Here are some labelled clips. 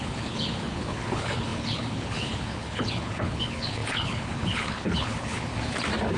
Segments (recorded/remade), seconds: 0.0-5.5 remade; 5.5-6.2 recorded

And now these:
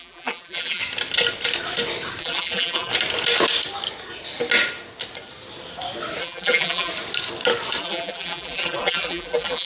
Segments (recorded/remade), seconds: 0.0-0.8 remade; 0.8-2.2 recorded; 2.2-2.9 remade; 2.9-6.2 recorded; 6.2-6.9 remade; 6.9-7.8 recorded; 7.8-9.6 remade

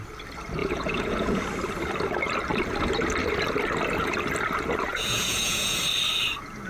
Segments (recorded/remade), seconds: 0.0-0.6 recorded; 0.6-1.4 remade; 1.4-4.9 recorded; 4.9-5.8 remade; 5.8-6.7 recorded

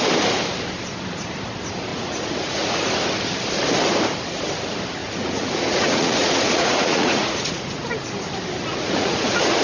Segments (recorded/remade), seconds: 0.0-1.9 recorded; 1.9-2.8 remade; 2.8-5.0 recorded; 5.0-7.9 remade; 7.9-8.7 recorded; 8.7-9.6 remade

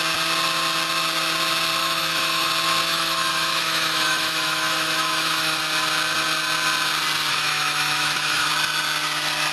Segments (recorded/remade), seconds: 0.0-1.8 recorded; 1.8-2.5 remade; 2.5-2.9 recorded; 2.9-5.6 remade; 5.6-7.3 recorded; 7.3-8.5 remade; 8.5-9.5 recorded